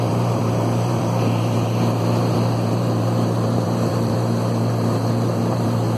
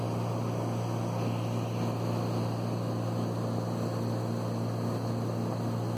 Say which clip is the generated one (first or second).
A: first